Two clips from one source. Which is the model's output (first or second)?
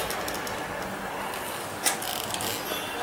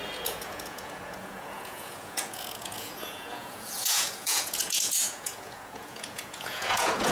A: second